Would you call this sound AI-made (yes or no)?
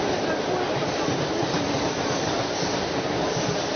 no